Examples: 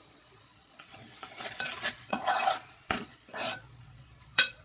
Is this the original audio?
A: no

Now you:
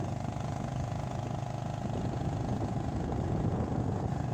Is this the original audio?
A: no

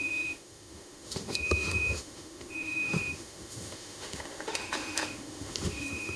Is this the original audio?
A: no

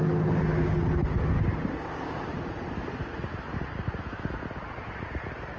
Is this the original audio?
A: yes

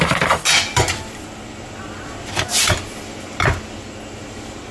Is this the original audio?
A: yes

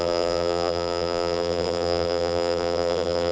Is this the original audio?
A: no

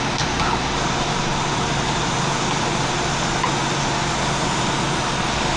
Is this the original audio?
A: yes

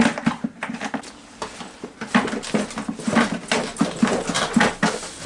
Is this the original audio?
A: yes